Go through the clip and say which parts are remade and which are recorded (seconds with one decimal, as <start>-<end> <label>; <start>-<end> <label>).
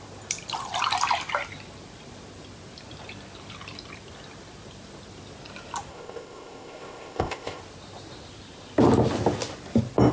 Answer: 0.0-5.9 recorded; 5.9-7.6 remade; 7.6-10.1 recorded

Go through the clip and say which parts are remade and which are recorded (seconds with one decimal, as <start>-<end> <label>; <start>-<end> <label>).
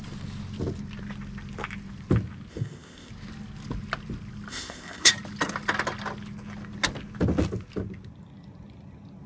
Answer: 0.0-2.5 recorded; 2.5-3.1 remade; 3.1-4.5 recorded; 4.5-5.1 remade; 5.1-9.3 recorded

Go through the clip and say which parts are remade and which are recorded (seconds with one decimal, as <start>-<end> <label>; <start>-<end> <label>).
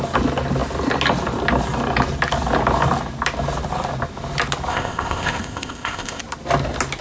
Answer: 0.0-4.7 recorded; 4.7-6.2 remade; 6.2-7.0 recorded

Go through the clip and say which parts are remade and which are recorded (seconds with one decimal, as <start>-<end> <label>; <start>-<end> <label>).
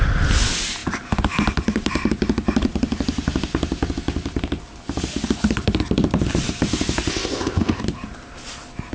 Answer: 0.0-7.1 recorded; 7.1-7.8 remade; 7.8-8.9 recorded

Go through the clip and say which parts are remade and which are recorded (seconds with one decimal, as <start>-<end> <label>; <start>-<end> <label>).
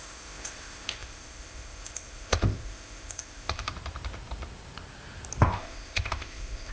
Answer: 0.0-3.7 remade; 3.7-5.4 recorded; 5.4-6.7 remade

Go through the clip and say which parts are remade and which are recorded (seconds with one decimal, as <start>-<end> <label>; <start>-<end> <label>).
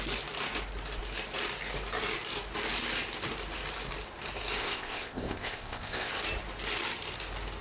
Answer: 0.0-4.6 recorded; 4.6-6.1 remade; 6.1-7.6 recorded